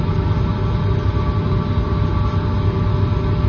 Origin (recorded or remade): recorded